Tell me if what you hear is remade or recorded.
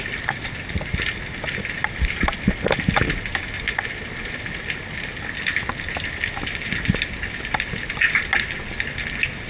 recorded